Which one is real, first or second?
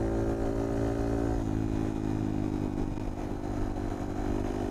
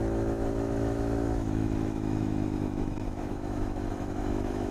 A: first